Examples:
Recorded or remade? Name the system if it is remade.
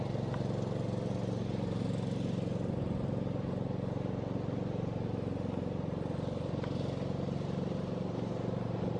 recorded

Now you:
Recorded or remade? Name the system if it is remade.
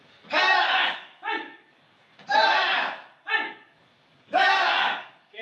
remade, codec, DAC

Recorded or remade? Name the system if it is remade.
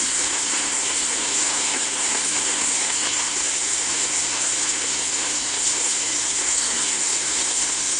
remade, codec, SNAC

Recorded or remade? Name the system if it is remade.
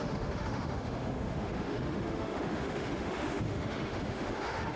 remade, autoencoder, DAC-VAE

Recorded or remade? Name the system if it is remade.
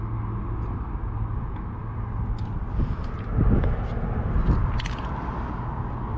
recorded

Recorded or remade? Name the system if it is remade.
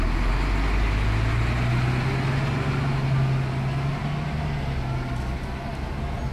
recorded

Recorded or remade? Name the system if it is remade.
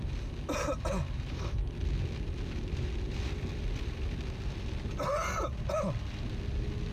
recorded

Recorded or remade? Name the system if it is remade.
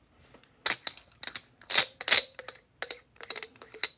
recorded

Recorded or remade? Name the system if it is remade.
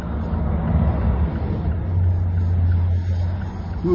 recorded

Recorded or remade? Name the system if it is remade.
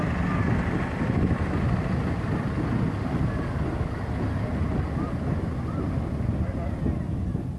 recorded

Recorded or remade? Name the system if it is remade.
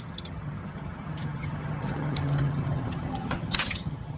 remade, vocoder, HiFi-GAN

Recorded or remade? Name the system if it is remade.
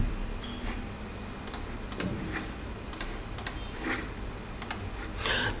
recorded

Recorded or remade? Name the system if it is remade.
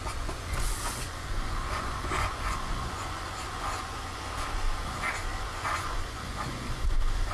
remade, vocoder, Vocos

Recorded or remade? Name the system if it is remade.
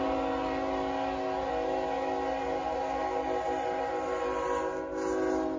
recorded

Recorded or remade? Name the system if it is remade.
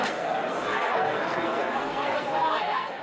remade, codec, SNAC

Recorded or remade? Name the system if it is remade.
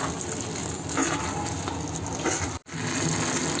recorded